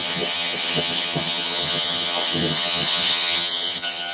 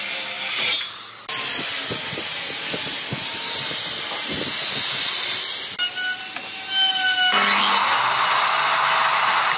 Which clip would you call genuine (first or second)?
second